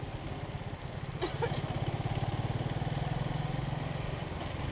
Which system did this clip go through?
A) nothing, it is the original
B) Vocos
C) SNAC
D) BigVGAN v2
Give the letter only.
A